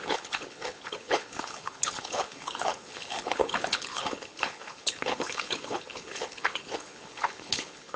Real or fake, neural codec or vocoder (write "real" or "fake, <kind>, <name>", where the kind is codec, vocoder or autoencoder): fake, codec, HILCodec